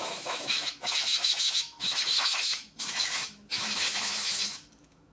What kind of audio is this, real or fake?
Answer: fake